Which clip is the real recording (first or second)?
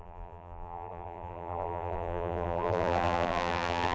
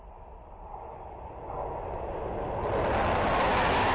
second